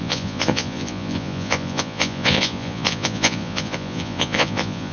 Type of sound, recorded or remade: remade